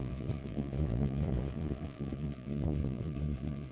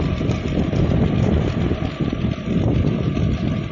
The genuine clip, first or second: second